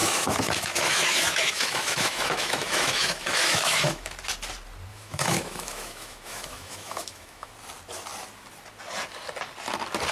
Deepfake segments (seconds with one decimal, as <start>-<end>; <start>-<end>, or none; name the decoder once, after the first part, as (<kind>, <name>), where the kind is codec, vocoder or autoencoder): 0.0-4.1 (autoencoder, DAC-VAE); 4.9-7.5